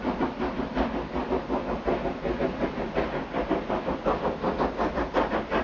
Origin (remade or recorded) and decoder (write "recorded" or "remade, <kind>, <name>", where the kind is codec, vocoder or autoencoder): recorded